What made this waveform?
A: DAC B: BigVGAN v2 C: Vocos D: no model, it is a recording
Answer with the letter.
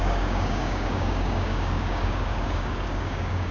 A